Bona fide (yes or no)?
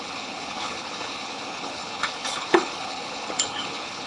no